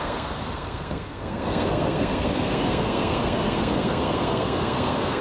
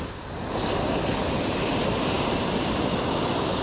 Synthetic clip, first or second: first